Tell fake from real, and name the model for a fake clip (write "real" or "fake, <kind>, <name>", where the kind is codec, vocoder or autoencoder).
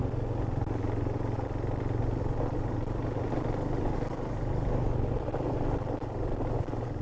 real